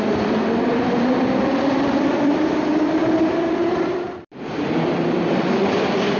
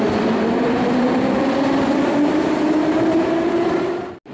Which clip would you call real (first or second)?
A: second